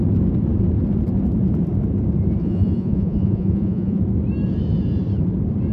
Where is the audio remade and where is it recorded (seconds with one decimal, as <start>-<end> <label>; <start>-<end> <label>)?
0.0-2.4 recorded; 2.4-4.0 remade; 4.0-5.7 recorded